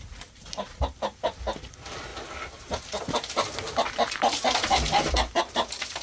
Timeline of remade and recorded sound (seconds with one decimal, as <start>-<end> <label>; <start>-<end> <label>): 0.0-6.0 recorded